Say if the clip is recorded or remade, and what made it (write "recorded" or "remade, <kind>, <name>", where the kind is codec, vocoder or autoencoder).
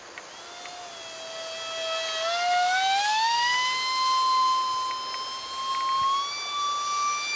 recorded